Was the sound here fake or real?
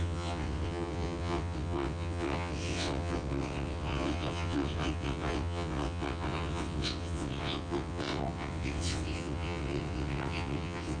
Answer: fake